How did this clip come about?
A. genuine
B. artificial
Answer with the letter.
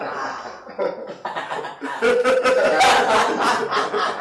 A